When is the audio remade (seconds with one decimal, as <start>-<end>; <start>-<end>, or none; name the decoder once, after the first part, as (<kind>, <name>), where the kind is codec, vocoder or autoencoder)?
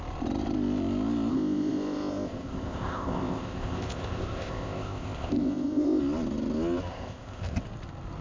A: 1.3-6.0 (codec, ZipCodec); 6.9-7.6